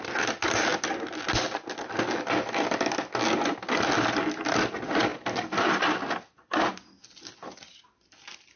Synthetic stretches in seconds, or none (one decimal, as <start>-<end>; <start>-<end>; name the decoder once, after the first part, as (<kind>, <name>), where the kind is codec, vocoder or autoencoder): none